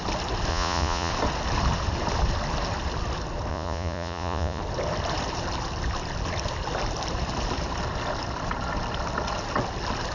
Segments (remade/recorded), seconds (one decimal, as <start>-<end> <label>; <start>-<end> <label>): 0.0-0.5 recorded; 0.5-1.1 remade; 1.1-3.5 recorded; 3.5-4.6 remade; 4.6-10.1 recorded